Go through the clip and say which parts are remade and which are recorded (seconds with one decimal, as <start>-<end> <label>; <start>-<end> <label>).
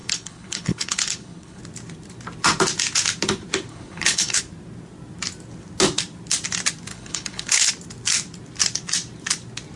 0.0-1.6 remade; 1.6-3.7 recorded; 3.7-4.4 remade; 4.4-6.9 recorded; 6.9-7.7 remade; 7.7-9.8 recorded